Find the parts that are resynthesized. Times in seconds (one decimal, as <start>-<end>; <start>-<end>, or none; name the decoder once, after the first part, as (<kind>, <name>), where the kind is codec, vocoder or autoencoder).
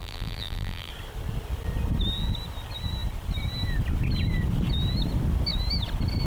0.0-0.9 (vocoder, BigVGAN v2)